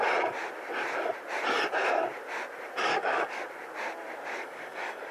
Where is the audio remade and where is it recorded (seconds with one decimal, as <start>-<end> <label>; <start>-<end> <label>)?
0.0-2.9 recorded; 2.9-3.4 remade; 3.4-4.3 recorded; 4.3-5.1 remade